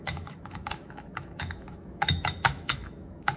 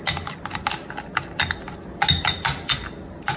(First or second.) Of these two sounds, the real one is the second